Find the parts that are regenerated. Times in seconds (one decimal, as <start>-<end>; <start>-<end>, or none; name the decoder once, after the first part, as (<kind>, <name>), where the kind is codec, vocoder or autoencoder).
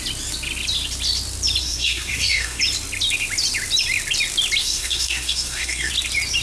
1.6-2.6 (codec, SNAC); 4.6-5.9